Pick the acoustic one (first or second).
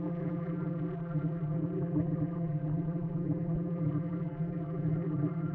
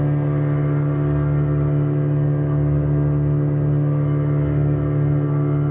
second